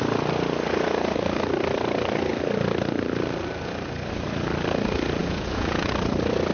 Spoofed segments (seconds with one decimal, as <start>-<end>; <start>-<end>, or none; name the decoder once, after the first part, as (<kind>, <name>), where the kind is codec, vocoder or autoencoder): 5.2-5.9 (vocoder, Vocos)